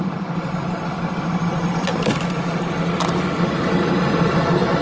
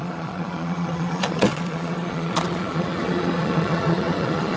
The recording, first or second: first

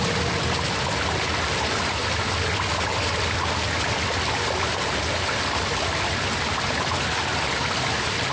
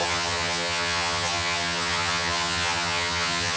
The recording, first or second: first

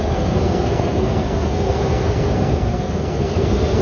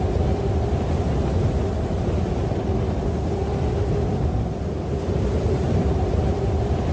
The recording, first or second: second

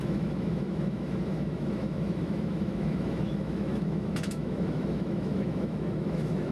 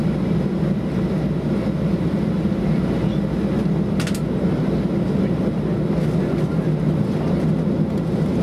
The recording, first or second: second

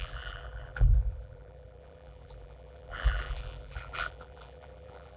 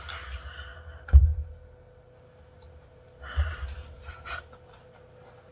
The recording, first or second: second